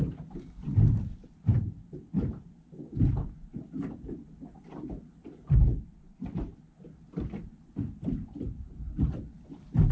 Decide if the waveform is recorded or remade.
recorded